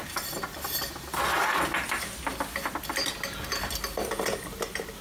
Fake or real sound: real